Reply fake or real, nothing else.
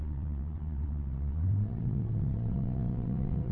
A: fake